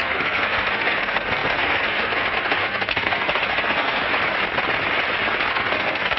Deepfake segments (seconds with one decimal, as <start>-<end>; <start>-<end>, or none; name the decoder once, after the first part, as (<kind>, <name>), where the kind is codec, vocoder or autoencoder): 0.0-4.0 (codec, SNAC); 5.5-6.2

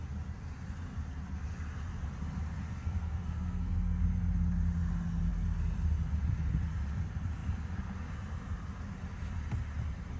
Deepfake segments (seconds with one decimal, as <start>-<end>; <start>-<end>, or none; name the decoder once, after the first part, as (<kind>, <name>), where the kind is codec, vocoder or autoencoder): 2.7-4.0 (codec, SNAC)

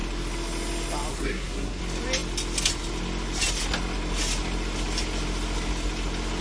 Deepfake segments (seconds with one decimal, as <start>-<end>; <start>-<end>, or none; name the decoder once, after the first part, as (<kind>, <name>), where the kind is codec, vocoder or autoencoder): 1.1-1.8 (codec, SNAC)